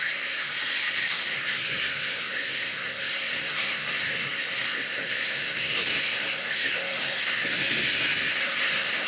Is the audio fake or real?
fake